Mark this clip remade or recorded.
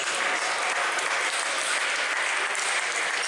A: recorded